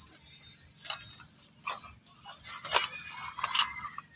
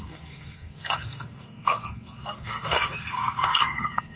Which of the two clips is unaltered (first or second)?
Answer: first